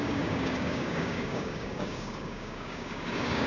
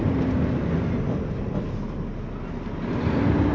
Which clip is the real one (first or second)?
second